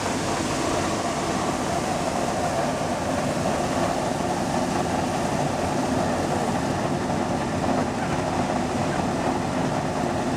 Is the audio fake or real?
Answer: real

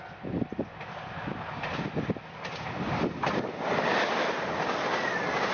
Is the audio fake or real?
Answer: real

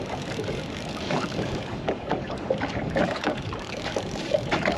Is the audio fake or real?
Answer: fake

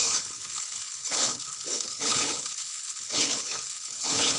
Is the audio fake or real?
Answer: fake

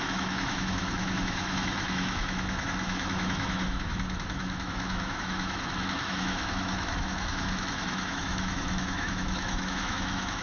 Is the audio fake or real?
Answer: fake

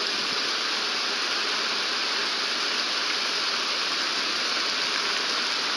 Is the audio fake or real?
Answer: real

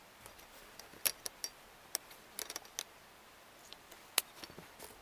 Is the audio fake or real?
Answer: real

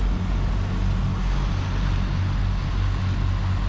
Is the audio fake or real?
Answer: real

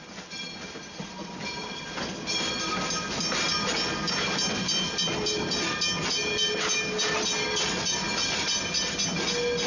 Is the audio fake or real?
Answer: real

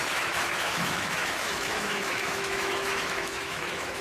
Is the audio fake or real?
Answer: fake